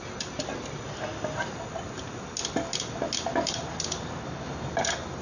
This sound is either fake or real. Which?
real